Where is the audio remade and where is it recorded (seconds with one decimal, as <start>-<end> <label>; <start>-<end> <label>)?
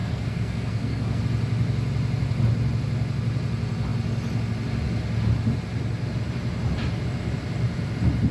0.0-1.2 remade; 1.2-8.3 recorded